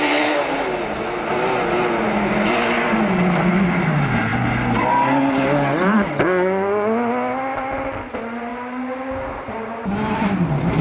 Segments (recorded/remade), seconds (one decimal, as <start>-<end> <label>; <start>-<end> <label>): 0.0-10.8 recorded